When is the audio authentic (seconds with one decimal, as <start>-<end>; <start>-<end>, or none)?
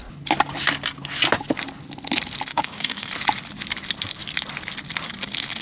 0.0-2.5; 3.1-5.6